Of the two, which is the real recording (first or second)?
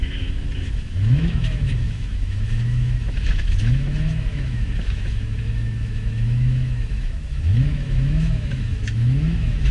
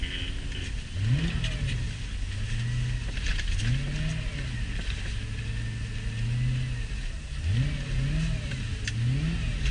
second